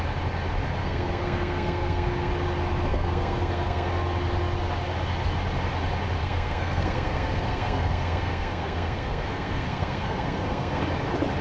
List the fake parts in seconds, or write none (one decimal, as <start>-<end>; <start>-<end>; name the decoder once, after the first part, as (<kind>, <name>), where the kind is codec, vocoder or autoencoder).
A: 0.8-2.3 (codec, SNAC); 2.9-3.9; 6.2-10.8